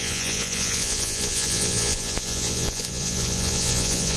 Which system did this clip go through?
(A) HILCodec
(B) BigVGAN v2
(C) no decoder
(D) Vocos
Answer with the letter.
D